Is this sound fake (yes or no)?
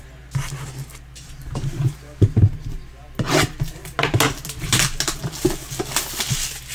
no